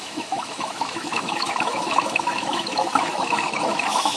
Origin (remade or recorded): remade